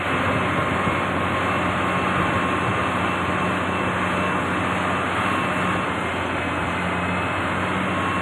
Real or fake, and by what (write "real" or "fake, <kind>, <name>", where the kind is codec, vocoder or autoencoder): real